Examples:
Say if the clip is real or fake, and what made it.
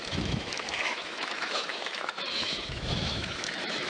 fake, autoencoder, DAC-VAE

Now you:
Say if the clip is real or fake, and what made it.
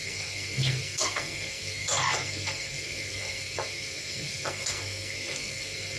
fake, codec, SNAC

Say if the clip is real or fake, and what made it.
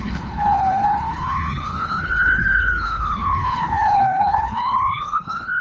fake, codec, HILCodec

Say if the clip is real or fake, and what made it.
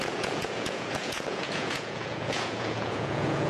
fake, vocoder, Vocos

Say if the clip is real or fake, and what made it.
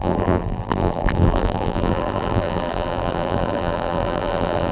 fake, vocoder, BigVGAN v2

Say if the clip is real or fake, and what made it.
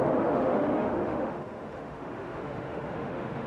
fake, autoencoder, DAC-VAE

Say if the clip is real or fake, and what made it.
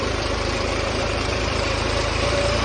fake, vocoder, BigVGAN v2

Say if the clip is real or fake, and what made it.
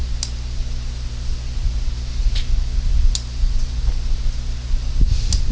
real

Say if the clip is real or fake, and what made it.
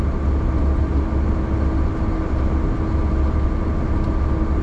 real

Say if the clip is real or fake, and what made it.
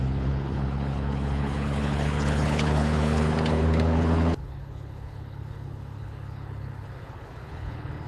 fake, codec, HILCodec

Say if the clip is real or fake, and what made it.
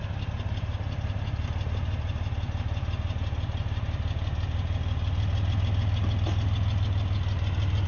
real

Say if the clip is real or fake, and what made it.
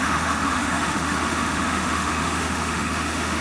fake, autoencoder, DAC-VAE